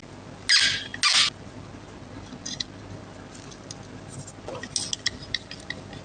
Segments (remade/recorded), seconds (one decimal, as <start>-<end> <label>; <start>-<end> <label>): 0.0-6.0 recorded